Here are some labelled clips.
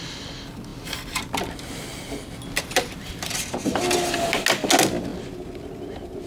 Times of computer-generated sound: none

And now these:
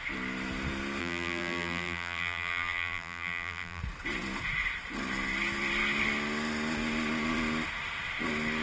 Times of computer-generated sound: 1.0-3.8

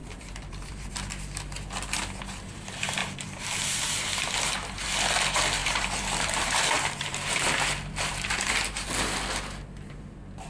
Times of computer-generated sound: 0.0-0.9; 3.0-4.0; 5.6-8.5

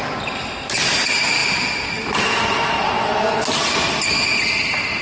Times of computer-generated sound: none

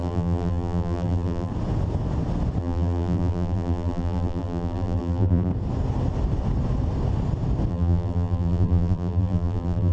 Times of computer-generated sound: 0.0-1.5; 2.6-5.5; 7.7-9.9